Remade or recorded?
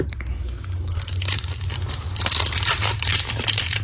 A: remade